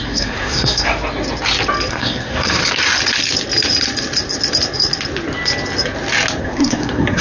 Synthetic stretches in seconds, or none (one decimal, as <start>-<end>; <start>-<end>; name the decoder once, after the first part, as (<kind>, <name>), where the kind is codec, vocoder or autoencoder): 0.0-0.9 (codec, SNAC); 1.9-2.6; 6.4-7.2